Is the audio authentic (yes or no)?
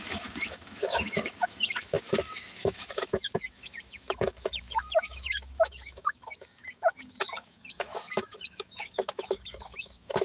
no